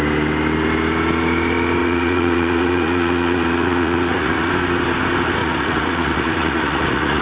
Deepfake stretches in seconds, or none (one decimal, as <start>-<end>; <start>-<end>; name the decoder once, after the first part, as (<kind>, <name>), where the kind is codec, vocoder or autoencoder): 1.8-4.5 (vocoder, Vocos); 5.4-7.2